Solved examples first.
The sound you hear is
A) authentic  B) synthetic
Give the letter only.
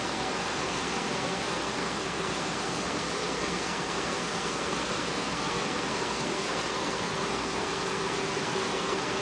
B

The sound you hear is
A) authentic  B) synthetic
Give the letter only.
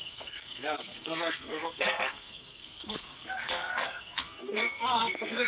B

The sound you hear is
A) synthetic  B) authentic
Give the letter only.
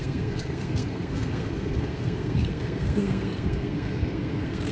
A